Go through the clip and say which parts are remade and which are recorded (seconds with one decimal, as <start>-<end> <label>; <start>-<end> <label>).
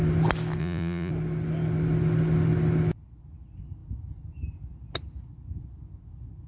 0.0-0.6 recorded; 0.6-1.1 remade; 1.1-6.5 recorded